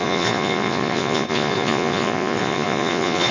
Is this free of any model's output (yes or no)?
no